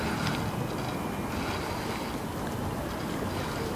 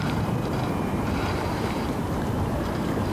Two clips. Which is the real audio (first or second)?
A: first